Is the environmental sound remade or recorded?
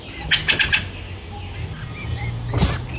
recorded